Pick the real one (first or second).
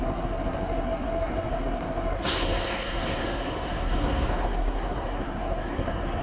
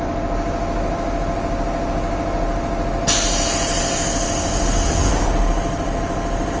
second